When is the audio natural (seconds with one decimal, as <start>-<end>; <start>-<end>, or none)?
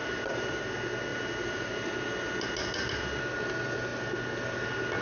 0.6-1.1; 1.7-5.0